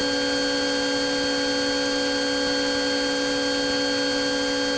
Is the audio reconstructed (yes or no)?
no